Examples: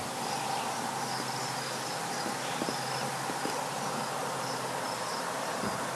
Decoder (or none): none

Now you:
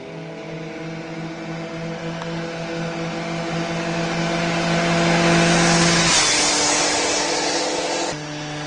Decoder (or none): none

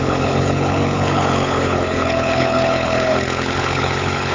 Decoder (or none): codec, HILCodec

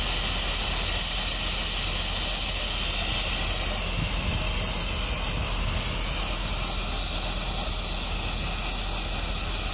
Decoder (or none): none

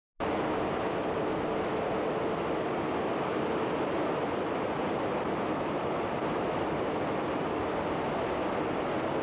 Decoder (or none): none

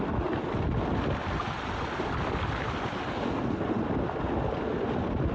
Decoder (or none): none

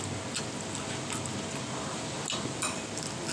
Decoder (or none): none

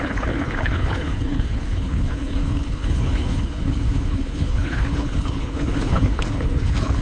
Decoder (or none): codec, HILCodec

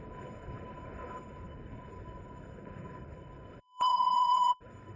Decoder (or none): codec, HILCodec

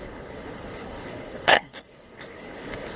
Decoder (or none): codec, HILCodec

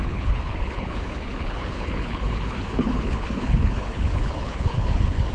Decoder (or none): codec, HILCodec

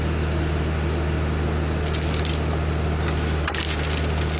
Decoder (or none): none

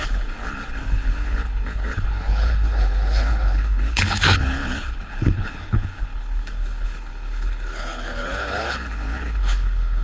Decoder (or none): codec, HILCodec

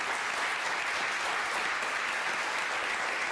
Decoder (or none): none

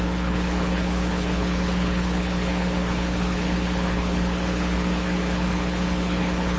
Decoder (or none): codec, HILCodec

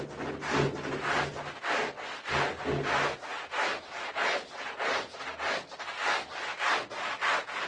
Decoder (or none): none